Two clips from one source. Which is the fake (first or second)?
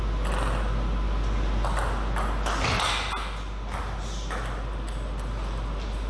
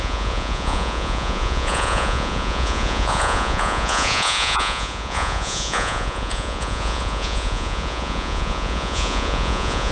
second